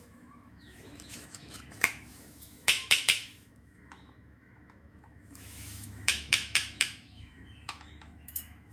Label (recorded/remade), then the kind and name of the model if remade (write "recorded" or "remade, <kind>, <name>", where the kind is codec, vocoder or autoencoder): remade, autoencoder, DAC-VAE